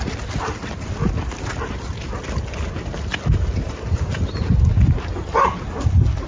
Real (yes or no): yes